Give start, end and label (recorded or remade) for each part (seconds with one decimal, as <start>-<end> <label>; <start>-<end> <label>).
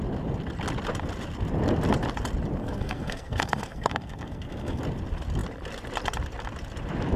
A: 0.0-2.6 recorded; 2.6-4.8 remade; 4.8-7.2 recorded